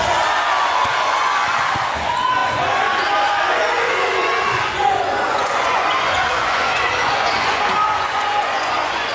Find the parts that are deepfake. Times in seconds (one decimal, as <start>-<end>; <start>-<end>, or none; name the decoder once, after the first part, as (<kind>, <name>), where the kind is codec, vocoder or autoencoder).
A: 0.0-9.1 (vocoder, Vocos)